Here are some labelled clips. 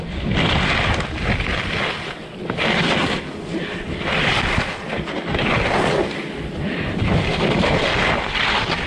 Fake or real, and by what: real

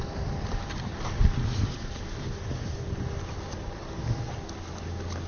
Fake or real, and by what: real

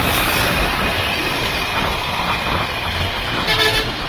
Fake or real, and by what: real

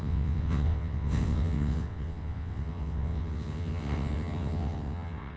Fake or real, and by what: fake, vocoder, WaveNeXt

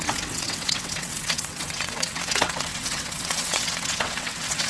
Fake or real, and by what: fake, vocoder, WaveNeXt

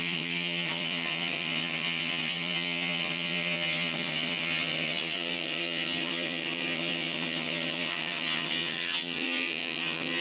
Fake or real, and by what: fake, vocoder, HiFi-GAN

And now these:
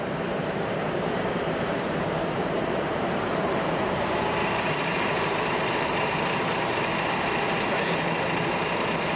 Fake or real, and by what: fake, vocoder, BigVGAN v2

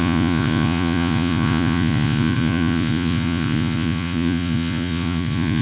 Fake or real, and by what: fake, vocoder, Vocos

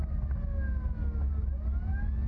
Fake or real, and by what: real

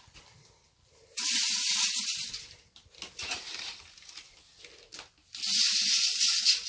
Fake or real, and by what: real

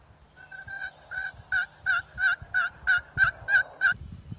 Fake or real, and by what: real